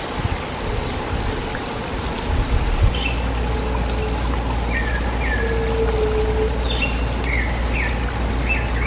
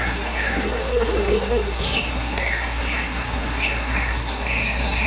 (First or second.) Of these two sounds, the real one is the first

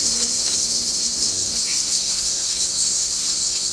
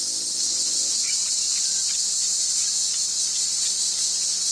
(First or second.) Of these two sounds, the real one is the second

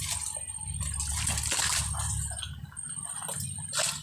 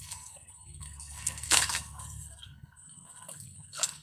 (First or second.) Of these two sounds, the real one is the first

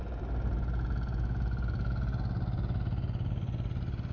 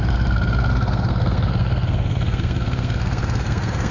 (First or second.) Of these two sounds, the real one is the first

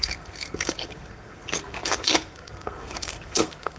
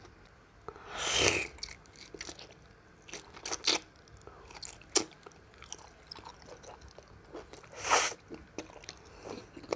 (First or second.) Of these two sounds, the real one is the second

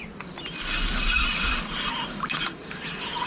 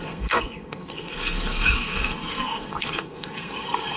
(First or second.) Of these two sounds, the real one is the first